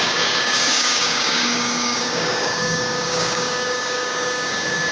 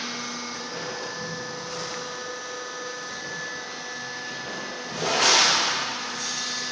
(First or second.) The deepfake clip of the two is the first